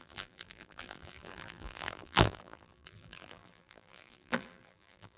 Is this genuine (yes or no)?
no